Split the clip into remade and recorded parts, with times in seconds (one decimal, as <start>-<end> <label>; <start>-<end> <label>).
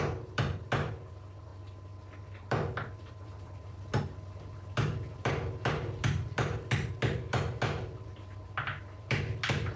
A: 0.0-1.5 remade; 1.5-2.2 recorded; 2.2-9.8 remade